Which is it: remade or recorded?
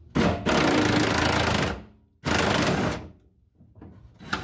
recorded